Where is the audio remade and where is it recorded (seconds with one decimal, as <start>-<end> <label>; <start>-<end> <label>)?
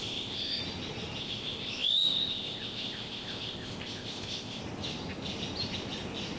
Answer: 0.0-0.6 remade; 0.6-1.2 recorded; 1.2-4.6 remade; 4.6-6.4 recorded